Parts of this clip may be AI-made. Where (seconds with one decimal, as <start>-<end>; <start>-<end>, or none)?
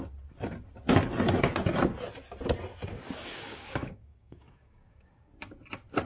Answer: 2.9-5.3